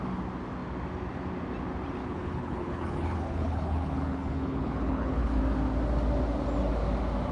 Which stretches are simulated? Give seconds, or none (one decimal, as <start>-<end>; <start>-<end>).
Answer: 2.0-5.4